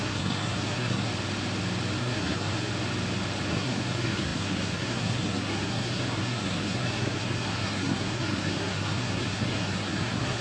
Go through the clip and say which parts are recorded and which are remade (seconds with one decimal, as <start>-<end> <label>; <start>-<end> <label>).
0.0-1.1 remade; 1.1-2.0 recorded; 2.0-2.7 remade; 2.7-3.5 recorded; 3.5-10.4 remade